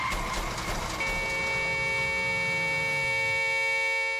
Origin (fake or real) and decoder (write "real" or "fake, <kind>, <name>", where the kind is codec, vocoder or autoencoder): real